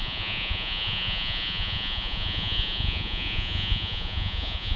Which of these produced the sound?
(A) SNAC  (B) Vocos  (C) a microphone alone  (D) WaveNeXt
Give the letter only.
B